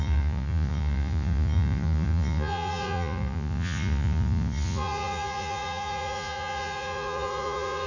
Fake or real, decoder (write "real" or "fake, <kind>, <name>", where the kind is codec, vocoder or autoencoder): fake, vocoder, Vocos